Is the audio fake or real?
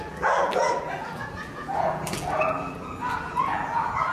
fake